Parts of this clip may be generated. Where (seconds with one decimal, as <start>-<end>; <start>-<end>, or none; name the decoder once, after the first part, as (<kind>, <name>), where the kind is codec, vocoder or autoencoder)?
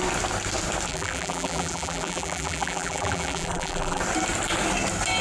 0.9-4.0 (vocoder, BigVGAN v2)